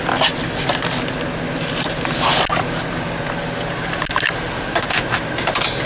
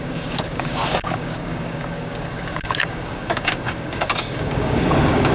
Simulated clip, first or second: second